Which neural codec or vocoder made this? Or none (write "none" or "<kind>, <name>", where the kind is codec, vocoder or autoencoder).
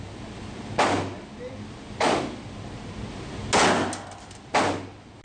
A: none